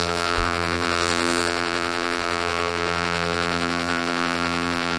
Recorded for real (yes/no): no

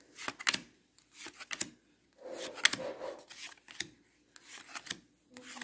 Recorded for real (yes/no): yes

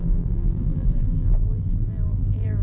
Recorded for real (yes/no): no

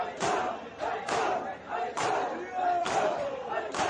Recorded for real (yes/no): no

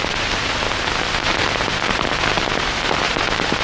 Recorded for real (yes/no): no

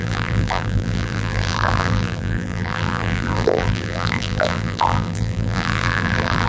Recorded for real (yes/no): no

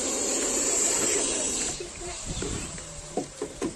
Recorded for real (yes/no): no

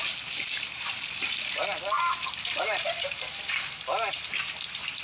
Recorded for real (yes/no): no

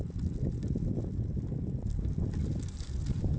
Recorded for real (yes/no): yes